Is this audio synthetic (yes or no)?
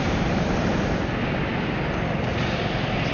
no